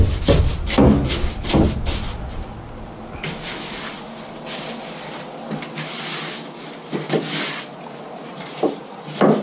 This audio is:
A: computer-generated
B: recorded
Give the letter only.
B